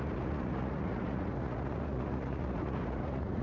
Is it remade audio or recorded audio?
remade